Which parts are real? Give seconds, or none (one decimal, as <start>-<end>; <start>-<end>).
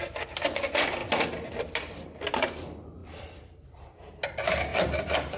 0.0-1.0; 2.6-3.0; 4.1-5.4